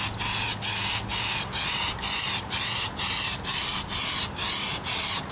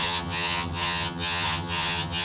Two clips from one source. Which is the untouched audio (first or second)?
first